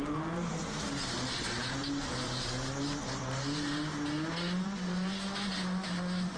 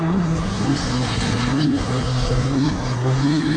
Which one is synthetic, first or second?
second